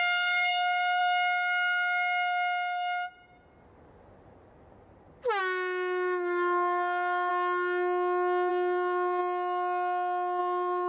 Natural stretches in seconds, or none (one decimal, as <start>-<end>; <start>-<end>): 1.0-5.4; 7.3-8.5; 9.2-10.4